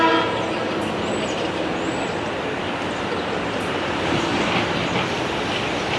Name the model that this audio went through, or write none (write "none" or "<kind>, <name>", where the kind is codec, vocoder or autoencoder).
none